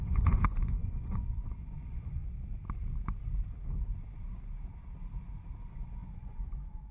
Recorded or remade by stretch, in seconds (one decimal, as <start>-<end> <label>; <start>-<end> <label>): 0.0-2.2 remade; 2.2-5.6 recorded; 5.6-6.9 remade